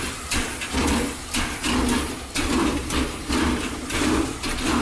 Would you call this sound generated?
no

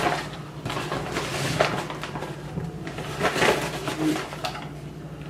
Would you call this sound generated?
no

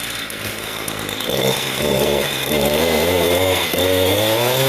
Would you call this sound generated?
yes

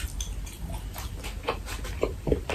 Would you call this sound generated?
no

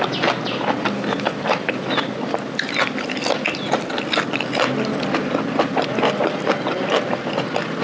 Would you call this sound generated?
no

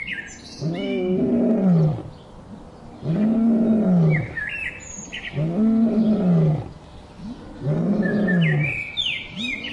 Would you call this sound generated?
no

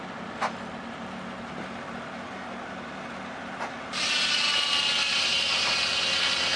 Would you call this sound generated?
no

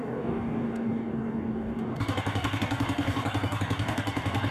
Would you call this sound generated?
yes